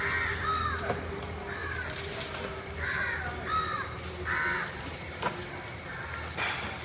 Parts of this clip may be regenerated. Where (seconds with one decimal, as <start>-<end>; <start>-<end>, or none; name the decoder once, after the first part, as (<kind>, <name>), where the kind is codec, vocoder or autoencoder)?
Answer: none